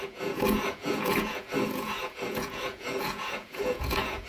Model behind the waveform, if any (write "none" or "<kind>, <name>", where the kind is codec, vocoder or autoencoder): vocoder, Vocos